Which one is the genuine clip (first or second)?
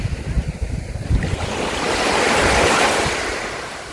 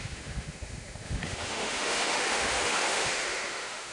first